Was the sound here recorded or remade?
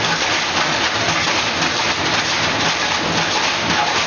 recorded